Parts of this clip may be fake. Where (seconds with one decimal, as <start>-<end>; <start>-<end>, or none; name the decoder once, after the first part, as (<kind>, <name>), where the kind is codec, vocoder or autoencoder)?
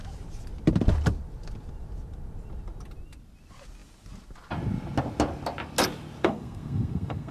6.2-7.3 (codec, SNAC)